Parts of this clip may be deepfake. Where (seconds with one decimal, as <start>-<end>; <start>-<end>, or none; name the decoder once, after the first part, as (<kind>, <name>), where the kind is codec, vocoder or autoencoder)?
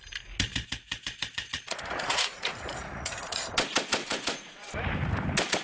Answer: 0.5-3.4 (vocoder, Vocos); 4.0-4.7